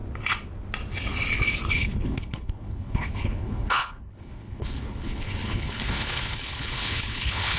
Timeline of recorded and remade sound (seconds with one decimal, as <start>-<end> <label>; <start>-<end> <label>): 0.0-1.7 recorded; 1.7-7.6 remade